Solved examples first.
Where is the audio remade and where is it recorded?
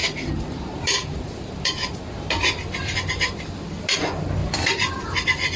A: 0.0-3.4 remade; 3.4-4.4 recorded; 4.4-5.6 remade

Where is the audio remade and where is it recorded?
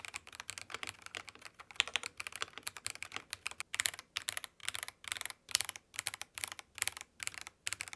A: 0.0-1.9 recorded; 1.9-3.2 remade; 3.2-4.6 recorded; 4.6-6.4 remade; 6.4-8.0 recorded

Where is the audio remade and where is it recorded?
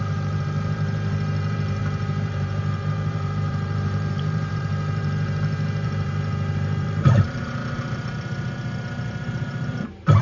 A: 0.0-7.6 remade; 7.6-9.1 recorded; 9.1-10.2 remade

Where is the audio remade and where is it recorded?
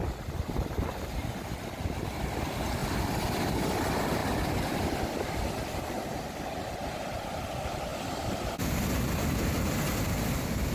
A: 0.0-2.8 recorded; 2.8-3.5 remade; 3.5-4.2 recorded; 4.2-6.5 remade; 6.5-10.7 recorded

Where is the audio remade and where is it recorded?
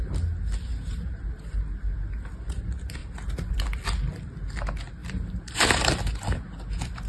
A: 0.0-0.7 recorded; 0.7-1.3 remade; 1.3-5.0 recorded; 5.0-5.9 remade; 5.9-7.1 recorded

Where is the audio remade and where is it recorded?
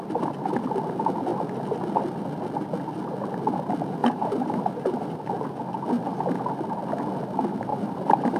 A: 0.0-4.0 recorded; 4.0-5.2 remade; 5.2-7.7 recorded; 7.7-8.4 remade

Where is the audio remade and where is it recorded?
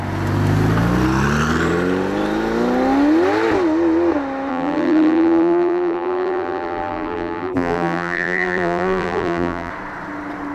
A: 0.0-4.5 recorded; 4.5-9.7 remade; 9.7-10.5 recorded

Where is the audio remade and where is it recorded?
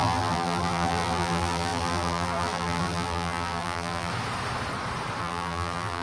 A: 0.0-4.1 remade; 4.1-5.2 recorded; 5.2-6.0 remade